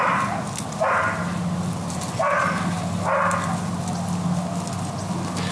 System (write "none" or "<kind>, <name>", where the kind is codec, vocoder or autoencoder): none